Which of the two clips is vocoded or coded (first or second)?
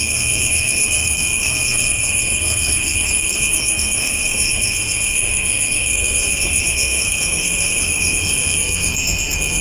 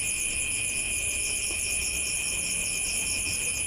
first